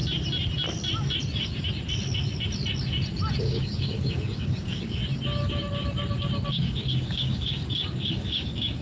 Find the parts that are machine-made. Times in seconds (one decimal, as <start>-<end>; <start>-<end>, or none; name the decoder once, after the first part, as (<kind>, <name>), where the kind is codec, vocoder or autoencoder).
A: 3.4-5.0 (codec, DAC); 6.5-8.8